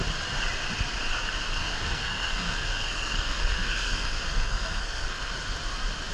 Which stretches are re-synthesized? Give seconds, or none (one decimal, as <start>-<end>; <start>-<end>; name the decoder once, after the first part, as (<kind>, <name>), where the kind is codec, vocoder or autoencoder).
1.6-5.3 (codec, SNAC)